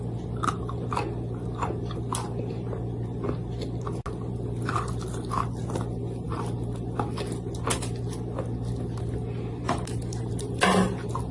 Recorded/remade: recorded